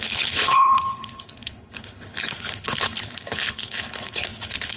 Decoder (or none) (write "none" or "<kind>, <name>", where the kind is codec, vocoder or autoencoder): codec, HILCodec